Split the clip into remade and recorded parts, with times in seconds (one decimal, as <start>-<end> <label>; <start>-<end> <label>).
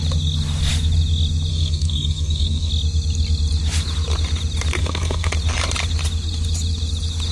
0.0-1.5 recorded; 1.5-2.7 remade; 2.7-4.8 recorded; 4.8-5.3 remade; 5.3-7.3 recorded